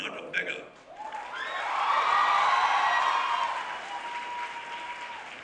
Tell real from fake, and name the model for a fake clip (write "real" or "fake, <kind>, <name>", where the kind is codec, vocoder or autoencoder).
real